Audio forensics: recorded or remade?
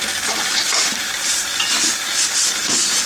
recorded